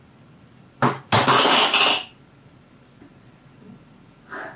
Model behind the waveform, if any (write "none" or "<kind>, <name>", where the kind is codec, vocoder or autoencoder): none